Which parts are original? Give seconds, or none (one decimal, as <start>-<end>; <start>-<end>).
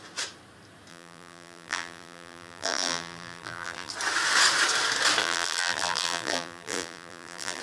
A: 0.0-0.9; 3.9-5.2